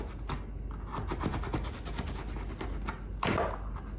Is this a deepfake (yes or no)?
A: no